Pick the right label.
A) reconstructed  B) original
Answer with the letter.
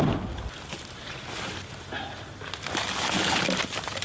B